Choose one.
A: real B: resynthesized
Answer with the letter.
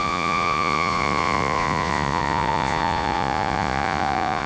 B